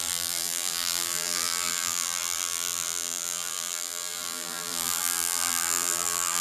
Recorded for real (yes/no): no